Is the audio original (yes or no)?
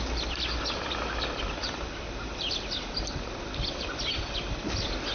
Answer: yes